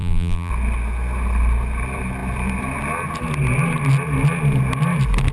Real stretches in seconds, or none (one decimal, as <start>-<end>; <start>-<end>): 0.5-5.3